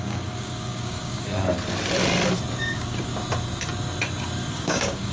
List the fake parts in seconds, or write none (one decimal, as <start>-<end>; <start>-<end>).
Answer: 0.0-1.3; 2.6-3.1; 4.5-5.1